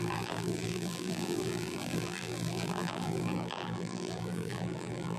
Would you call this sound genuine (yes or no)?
no